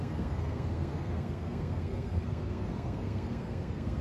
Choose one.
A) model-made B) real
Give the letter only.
A